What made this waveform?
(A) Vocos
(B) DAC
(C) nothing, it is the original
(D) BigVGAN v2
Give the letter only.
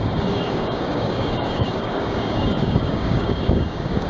B